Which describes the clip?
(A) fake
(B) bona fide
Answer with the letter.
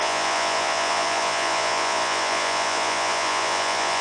A